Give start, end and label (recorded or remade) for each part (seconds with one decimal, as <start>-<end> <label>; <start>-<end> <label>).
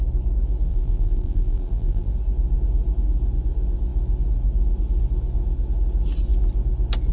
0.0-0.7 recorded; 0.7-2.1 remade; 2.1-7.1 recorded